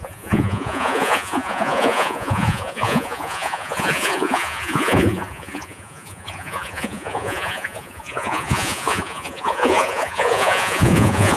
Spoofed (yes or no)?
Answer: yes